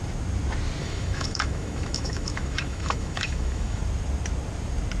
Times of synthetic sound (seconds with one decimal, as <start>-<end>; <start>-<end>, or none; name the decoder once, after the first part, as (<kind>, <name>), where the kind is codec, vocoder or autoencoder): 0.8-3.8 (autoencoder, DAC-VAE)